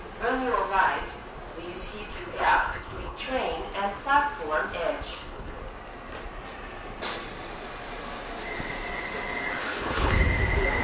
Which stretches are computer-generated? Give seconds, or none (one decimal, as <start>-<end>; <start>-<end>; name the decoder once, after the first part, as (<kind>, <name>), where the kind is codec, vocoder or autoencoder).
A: 2.1-3.2 (codec, HILCodec); 5.1-5.6; 9.6-10.2